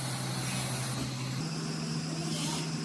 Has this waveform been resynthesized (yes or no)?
no